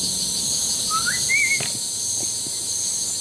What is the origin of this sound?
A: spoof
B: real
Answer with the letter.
B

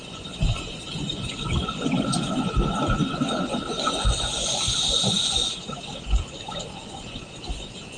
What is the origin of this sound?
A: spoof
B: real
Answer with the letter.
A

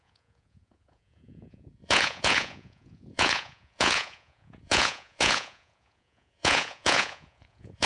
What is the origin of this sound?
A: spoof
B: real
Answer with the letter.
A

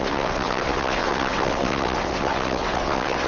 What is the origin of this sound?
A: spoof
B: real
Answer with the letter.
A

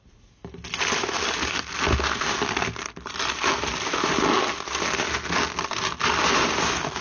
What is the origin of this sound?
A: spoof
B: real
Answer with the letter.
B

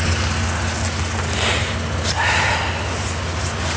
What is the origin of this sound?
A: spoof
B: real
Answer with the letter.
B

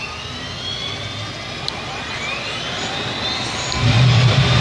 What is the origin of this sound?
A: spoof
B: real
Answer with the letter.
B